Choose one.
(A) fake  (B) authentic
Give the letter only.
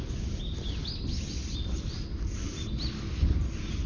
B